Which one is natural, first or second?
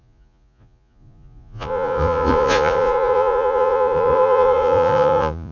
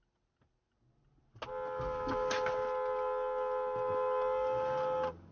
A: second